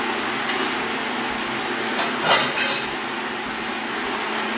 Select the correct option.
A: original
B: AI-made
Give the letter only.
A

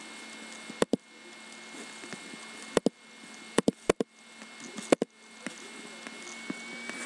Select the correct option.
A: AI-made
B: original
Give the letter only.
B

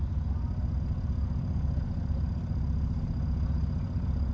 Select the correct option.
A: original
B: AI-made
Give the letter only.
A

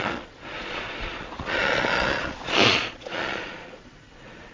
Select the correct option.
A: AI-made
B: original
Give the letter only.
A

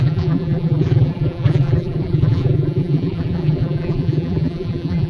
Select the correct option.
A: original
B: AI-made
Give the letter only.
B